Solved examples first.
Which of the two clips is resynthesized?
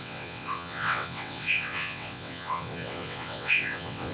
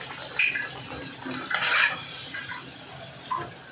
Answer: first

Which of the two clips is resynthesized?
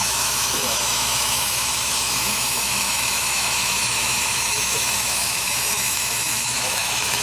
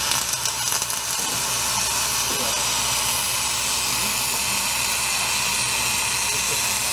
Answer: first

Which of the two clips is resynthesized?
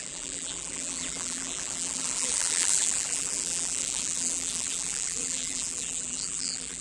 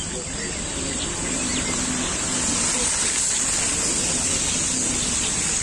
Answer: first